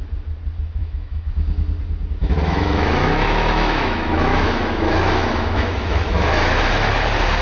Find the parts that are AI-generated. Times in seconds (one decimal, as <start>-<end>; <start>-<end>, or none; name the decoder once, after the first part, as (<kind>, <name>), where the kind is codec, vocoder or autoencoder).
0.8-1.3 (autoencoder, DAC-VAE); 2.2-6.6